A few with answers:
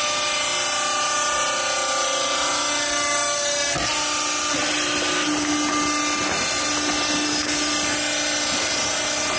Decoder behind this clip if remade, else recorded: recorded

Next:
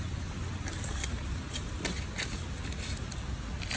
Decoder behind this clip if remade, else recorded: recorded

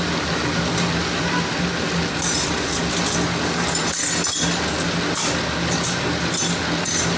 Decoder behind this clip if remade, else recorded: recorded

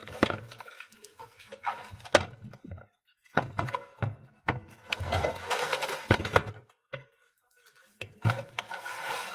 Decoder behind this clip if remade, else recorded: remade, codec, SNAC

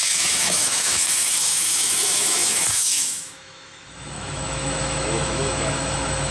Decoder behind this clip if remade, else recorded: remade, autoencoder, DAC-VAE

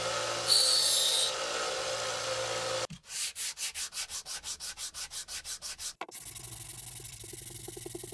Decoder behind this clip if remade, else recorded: recorded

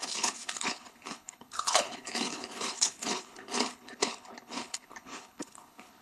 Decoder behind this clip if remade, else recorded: remade, codec, HILCodec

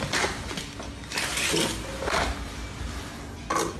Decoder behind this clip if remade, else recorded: recorded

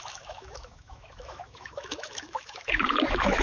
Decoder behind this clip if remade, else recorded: remade, autoencoder, DAC-VAE